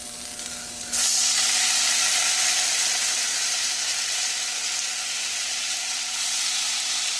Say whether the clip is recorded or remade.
recorded